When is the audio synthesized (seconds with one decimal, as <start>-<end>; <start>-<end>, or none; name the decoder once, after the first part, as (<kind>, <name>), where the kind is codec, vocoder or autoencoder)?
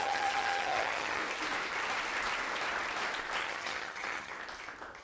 0.0-1.2 (vocoder, HiFi-GAN); 3.4-4.3